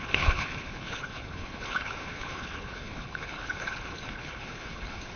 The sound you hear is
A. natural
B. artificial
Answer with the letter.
B